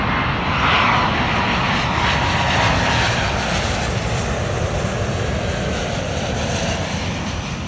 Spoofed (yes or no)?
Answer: no